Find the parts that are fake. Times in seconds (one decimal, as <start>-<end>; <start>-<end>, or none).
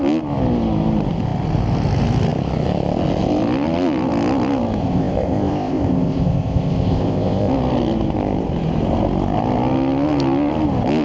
4.8-7.5